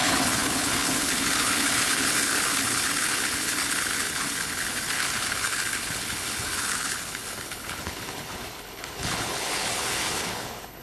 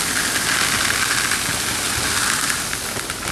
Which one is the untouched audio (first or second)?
second